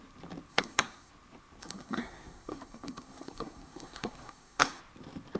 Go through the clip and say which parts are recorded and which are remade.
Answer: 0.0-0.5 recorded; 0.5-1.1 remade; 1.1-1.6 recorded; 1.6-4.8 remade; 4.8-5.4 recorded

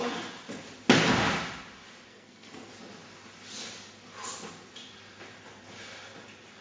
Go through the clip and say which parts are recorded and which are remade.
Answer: 0.0-2.1 recorded; 2.1-2.7 remade; 2.7-6.6 recorded